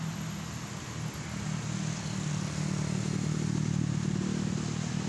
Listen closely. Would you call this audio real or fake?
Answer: real